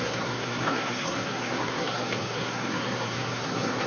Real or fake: fake